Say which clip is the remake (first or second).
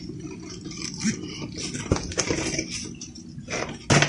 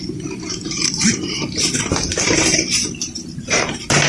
second